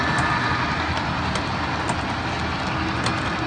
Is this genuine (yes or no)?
yes